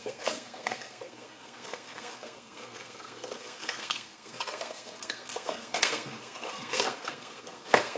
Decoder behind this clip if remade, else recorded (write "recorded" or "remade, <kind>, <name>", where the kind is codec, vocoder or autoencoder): remade, codec, SNAC